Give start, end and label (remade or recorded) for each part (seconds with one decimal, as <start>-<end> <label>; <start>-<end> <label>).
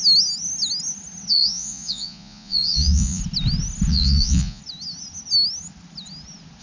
0.0-1.3 recorded; 1.3-3.2 remade; 3.2-3.9 recorded; 3.9-4.6 remade; 4.6-6.6 recorded